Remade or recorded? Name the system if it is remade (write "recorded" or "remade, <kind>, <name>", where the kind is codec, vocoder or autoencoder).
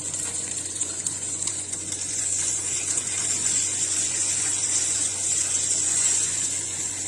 remade, vocoder, Vocos